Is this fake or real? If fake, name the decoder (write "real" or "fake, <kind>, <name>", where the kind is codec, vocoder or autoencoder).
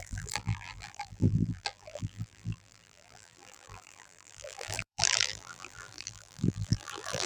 fake, vocoder, BigVGAN v2